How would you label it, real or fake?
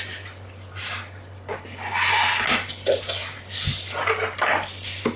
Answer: real